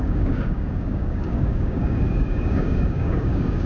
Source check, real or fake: fake